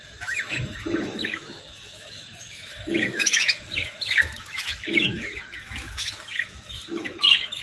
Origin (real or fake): fake